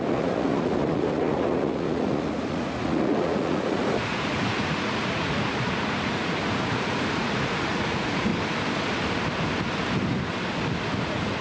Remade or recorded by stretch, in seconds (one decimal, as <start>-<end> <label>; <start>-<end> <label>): 0.0-8.3 remade; 8.3-11.0 recorded; 11.0-11.4 remade